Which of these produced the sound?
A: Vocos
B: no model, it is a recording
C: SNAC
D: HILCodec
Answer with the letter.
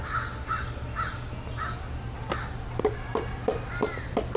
B